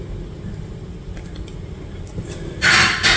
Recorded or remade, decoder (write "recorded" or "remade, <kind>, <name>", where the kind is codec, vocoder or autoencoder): recorded